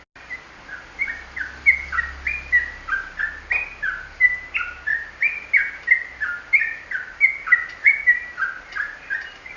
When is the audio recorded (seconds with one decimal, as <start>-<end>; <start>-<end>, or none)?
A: 0.0-9.6

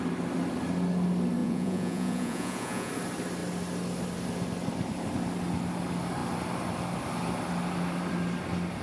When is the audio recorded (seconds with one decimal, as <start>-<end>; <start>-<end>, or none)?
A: 0.0-1.4; 2.9-8.8

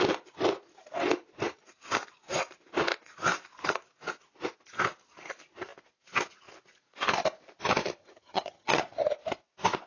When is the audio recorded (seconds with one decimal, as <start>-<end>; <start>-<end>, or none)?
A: 0.0-8.0; 8.8-9.9

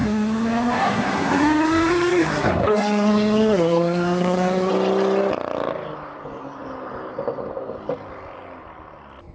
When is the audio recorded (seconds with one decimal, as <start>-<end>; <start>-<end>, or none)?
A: 4.7-9.3

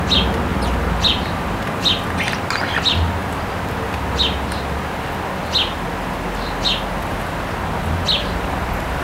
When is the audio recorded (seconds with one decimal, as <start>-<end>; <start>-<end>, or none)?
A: 0.0-0.5; 1.7-9.0

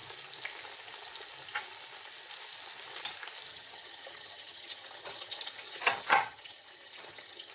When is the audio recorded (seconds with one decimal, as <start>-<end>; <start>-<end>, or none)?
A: 0.0-3.5